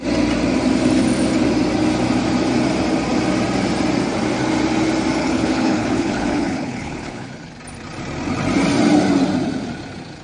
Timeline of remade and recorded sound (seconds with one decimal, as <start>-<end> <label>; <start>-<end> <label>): 0.0-5.2 recorded; 5.2-7.5 remade; 7.5-10.2 recorded